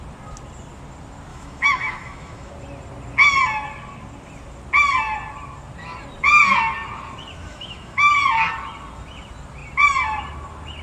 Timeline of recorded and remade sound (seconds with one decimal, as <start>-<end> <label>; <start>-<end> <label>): 0.0-1.3 recorded; 1.3-2.5 remade; 2.5-7.5 recorded; 7.5-8.1 remade; 8.1-10.8 recorded